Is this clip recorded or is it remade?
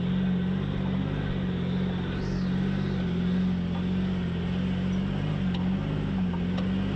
recorded